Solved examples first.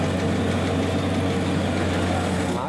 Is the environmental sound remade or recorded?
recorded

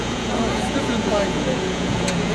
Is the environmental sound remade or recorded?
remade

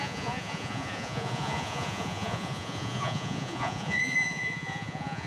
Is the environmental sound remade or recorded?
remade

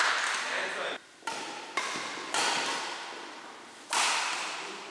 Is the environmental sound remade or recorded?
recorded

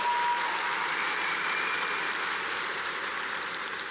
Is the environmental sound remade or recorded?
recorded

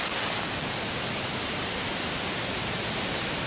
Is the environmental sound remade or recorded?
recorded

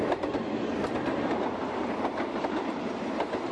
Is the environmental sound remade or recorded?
recorded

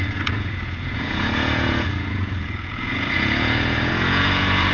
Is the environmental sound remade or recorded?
remade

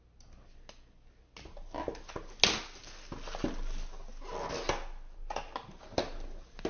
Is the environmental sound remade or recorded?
recorded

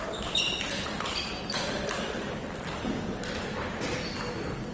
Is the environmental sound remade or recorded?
recorded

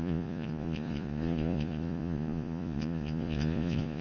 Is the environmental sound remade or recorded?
remade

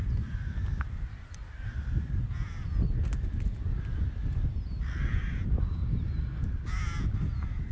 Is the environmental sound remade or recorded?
recorded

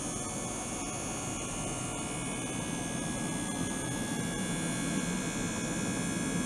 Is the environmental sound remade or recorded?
recorded